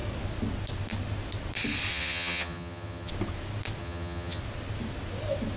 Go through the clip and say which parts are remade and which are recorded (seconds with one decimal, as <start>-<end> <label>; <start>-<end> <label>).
0.0-1.9 recorded; 1.9-3.1 remade; 3.1-3.8 recorded; 3.8-4.4 remade; 4.4-5.6 recorded